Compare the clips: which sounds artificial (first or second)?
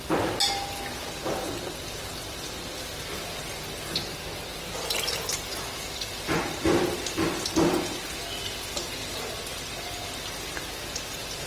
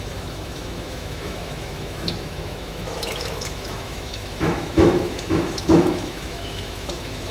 second